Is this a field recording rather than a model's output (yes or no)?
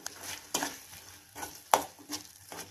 no